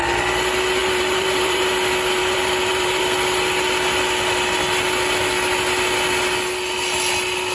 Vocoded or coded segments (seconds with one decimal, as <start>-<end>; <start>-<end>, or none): 0.8-1.7; 2.2-3.0